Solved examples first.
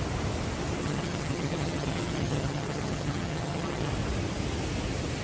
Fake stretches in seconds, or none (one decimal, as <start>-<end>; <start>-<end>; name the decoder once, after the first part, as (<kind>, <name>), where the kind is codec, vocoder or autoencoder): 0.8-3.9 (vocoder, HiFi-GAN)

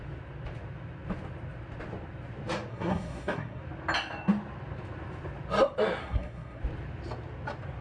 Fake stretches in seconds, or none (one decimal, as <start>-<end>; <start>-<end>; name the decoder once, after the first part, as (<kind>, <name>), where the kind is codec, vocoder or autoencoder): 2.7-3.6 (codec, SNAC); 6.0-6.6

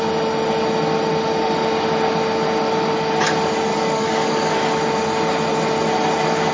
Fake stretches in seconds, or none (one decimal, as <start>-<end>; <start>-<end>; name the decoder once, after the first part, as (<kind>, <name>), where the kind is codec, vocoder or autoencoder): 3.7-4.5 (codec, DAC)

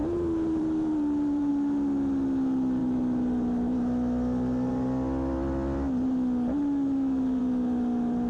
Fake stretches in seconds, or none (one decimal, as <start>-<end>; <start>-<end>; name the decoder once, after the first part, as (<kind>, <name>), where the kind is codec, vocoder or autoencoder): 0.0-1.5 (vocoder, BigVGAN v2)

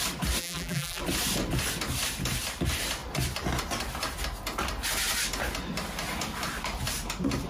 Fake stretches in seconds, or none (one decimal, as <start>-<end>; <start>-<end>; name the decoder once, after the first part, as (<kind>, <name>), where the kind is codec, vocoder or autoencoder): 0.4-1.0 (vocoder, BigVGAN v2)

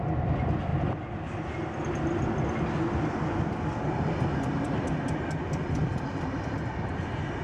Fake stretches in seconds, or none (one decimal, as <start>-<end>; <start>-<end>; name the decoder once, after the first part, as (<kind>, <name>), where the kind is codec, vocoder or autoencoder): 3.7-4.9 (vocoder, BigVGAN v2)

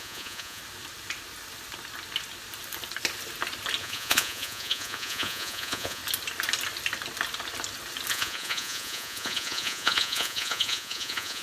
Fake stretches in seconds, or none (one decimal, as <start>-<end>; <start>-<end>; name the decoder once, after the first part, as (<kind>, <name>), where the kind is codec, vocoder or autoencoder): 0.0-0.6 (vocoder, Vocos); 3.8-6.0; 8.1-11.4